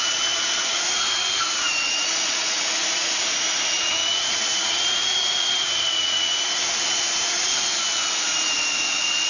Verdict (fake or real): fake